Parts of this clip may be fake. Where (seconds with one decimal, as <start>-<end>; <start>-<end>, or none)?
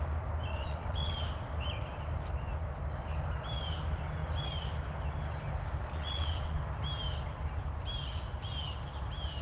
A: 0.5-1.1; 5.9-6.6